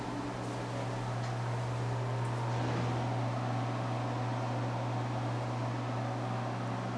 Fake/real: real